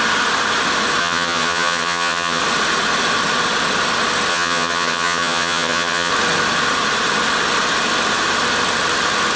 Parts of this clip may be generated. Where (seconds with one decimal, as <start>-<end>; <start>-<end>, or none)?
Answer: 1.0-2.4; 4.3-6.1